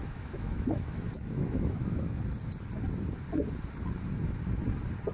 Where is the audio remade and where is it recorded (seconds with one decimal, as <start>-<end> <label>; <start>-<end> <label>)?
0.0-2.2 remade; 2.2-5.1 recorded